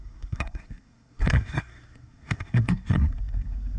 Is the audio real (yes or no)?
no